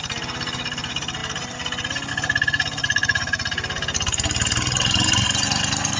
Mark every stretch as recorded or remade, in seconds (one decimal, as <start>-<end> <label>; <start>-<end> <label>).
0.0-6.0 recorded